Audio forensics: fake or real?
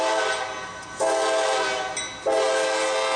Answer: real